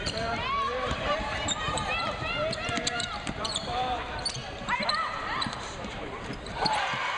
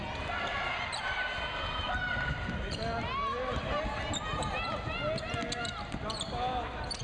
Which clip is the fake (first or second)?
first